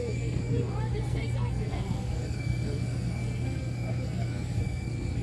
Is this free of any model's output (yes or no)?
no